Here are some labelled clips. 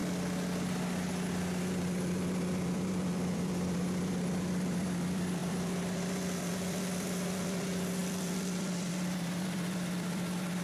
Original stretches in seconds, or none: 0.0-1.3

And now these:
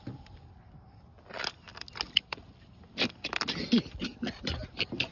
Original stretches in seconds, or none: 0.0-5.1